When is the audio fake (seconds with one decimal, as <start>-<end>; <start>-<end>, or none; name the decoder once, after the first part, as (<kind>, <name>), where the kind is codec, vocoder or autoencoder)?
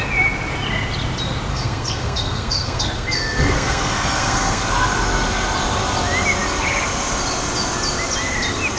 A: 1.5-4.6 (codec, SNAC)